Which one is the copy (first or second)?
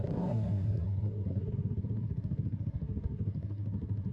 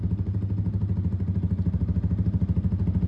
first